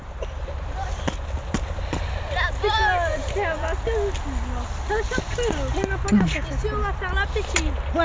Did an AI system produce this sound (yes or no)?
no